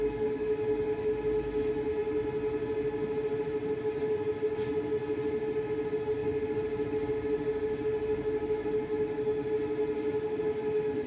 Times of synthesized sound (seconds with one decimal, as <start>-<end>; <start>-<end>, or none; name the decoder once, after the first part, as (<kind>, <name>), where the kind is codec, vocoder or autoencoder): none